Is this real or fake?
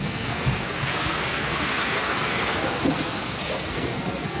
fake